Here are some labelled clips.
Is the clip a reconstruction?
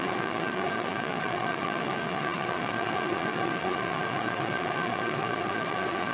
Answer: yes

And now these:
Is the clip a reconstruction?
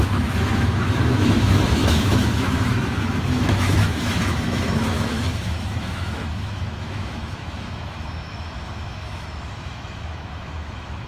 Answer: yes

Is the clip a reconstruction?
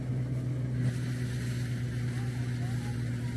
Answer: no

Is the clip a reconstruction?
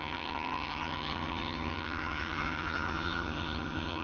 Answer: yes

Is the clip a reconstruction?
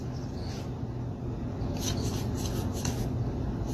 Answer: no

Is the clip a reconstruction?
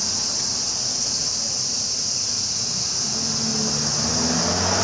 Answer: no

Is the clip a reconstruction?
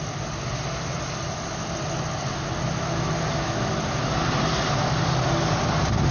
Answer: no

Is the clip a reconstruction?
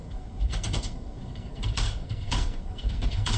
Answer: yes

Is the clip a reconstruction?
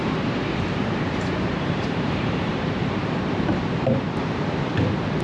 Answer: yes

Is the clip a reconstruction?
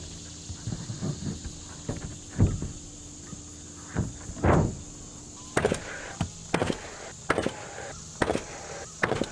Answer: no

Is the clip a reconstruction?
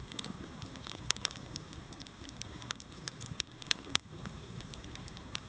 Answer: yes